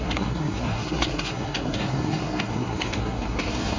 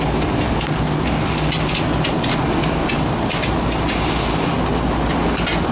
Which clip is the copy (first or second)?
first